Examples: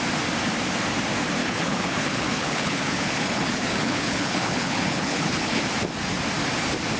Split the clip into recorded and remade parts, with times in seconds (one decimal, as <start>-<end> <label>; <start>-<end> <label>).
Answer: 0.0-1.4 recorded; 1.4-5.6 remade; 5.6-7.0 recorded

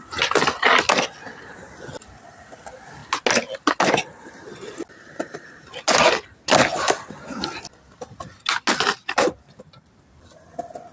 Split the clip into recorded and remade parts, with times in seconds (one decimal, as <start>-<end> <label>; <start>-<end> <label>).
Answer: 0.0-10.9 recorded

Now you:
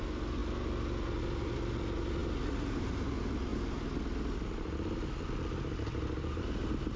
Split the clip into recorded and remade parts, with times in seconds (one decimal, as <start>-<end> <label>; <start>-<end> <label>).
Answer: 0.0-7.0 recorded